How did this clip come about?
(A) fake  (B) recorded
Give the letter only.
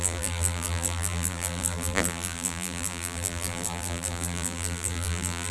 A